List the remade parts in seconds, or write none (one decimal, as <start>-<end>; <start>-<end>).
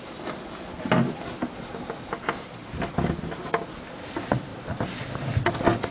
none